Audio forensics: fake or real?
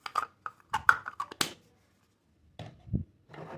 real